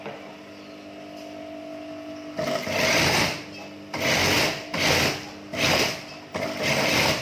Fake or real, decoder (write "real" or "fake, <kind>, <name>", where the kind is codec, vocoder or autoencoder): real